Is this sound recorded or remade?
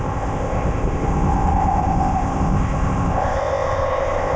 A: remade